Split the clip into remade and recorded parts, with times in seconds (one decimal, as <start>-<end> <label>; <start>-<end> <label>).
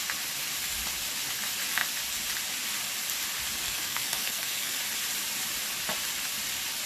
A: 0.0-3.6 recorded; 3.6-4.8 remade; 4.8-6.9 recorded